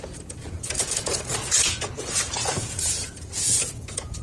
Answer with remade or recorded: remade